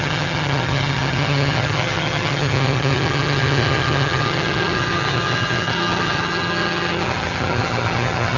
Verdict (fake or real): fake